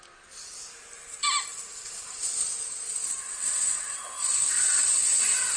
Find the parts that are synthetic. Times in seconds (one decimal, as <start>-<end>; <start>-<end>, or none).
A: none